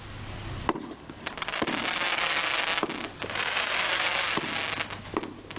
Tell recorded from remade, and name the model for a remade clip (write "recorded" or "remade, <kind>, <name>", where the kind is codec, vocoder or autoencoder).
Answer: recorded